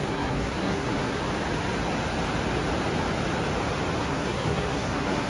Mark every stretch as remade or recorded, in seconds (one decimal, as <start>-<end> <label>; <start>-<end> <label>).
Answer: 0.0-1.2 remade; 1.2-4.0 recorded; 4.0-5.3 remade